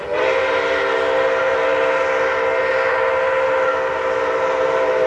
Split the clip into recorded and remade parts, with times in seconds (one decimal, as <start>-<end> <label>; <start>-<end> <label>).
0.0-5.1 recorded